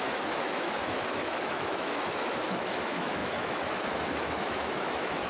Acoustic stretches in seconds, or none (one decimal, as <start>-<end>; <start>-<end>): none